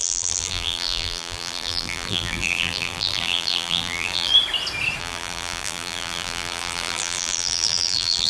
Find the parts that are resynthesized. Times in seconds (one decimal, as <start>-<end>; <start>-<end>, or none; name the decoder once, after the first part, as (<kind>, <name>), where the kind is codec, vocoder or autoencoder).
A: 0.0-4.3 (vocoder, BigVGAN v2); 5.0-8.3

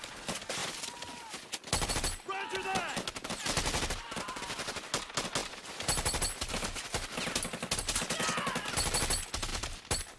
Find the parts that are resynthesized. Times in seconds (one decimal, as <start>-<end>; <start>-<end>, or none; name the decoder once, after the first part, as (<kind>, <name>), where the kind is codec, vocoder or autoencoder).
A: 0.6-1.9 (vocoder, BigVGAN v2); 9.5-10.2

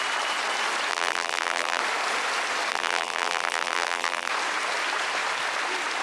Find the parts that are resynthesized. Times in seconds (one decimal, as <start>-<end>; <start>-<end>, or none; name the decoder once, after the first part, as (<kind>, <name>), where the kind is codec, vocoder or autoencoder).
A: 0.9-1.8 (vocoder, BigVGAN v2); 2.7-4.3

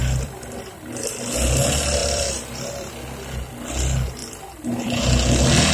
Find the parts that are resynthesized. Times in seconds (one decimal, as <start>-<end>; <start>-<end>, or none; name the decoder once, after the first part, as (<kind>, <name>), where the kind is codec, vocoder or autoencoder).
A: 0.0-1.0 (vocoder, BigVGAN v2); 2.0-2.9; 4.2-5.0

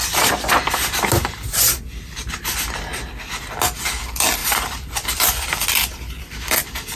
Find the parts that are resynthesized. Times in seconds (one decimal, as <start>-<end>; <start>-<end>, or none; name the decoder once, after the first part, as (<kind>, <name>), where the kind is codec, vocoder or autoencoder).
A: 4.4-5.5 (vocoder, BigVGAN v2)

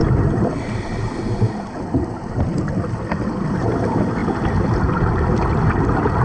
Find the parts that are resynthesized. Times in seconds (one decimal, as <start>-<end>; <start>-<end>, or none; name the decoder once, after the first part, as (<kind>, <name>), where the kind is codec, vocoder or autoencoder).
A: none

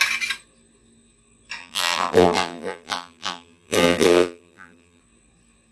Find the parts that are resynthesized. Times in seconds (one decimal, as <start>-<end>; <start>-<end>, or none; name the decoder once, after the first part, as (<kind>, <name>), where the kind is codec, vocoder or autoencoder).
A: 1.6-5.0 (vocoder, BigVGAN v2)

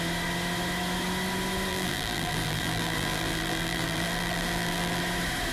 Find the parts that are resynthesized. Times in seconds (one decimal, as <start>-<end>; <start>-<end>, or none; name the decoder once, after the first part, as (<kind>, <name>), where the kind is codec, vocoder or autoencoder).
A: 1.7-5.0 (vocoder, BigVGAN v2)